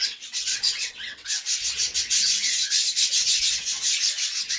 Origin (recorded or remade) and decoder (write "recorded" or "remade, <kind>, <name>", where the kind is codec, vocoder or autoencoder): remade, vocoder, WaveNeXt